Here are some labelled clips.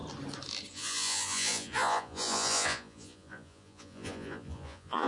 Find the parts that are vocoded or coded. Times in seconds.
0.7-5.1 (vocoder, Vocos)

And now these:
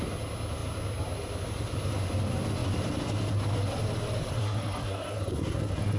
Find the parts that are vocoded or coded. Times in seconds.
4.4-6.0 (codec, SNAC)

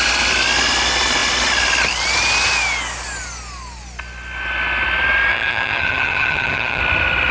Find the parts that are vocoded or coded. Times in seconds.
5.3-6.8 (vocoder, HiFi-GAN)

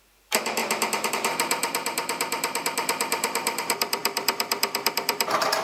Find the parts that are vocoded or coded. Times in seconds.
0.0-5.6 (vocoder, BigVGAN v2)

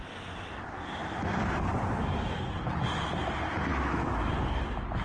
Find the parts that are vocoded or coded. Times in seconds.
3.7-4.3 (autoencoder, DAC-VAE)

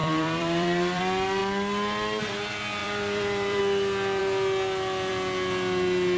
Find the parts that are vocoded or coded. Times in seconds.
0.0-1.0 (vocoder, BigVGAN v2); 2.8-3.6

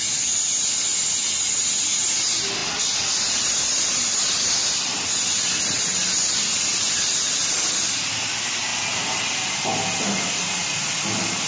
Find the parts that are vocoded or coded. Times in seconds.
none